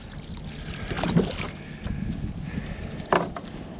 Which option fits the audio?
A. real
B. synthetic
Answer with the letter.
A